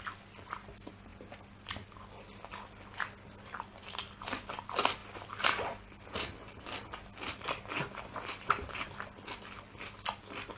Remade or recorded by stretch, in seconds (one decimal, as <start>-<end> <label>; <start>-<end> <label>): 0.0-10.6 recorded